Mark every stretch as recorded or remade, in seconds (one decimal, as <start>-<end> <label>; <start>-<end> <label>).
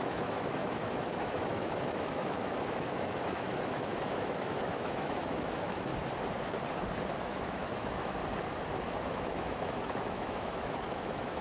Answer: 0.0-5.9 remade; 5.9-7.2 recorded; 7.2-8.2 remade; 8.2-8.8 recorded; 8.8-11.4 remade